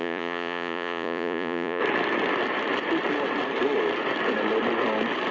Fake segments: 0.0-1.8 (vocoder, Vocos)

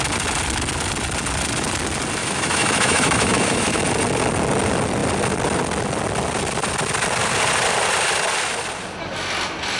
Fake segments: 2.2-3.8 (autoencoder, DAC-VAE)

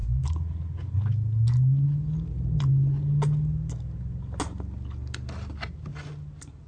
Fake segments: none

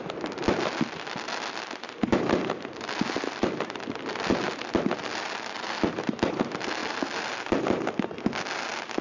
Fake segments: none

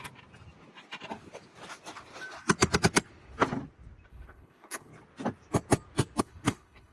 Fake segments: 4.1-4.9 (codec, HILCodec); 6.2-6.9

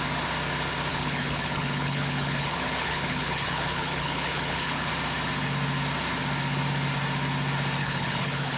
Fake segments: 0.9-4.9 (codec, HILCodec); 7.8-8.6